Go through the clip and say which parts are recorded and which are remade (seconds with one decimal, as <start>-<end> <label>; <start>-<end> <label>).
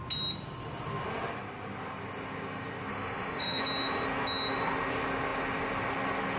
0.0-2.9 recorded; 2.9-3.6 remade; 3.6-6.4 recorded